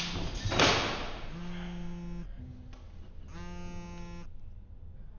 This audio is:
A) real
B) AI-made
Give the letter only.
A